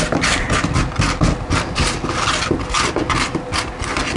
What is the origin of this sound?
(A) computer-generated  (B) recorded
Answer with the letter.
B